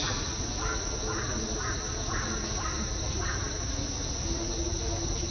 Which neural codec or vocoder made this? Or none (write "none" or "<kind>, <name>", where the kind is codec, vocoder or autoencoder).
none